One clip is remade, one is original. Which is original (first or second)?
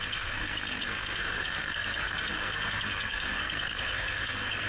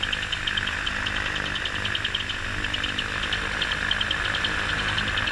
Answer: second